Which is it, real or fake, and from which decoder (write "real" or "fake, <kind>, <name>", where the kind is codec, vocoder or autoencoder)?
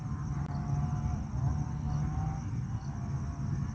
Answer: real